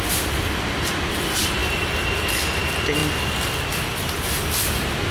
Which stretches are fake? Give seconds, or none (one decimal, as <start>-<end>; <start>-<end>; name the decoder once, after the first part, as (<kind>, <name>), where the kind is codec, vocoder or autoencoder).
none